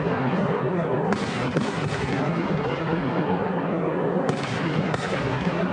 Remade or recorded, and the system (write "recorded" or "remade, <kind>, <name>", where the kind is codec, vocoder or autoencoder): remade, codec, SNAC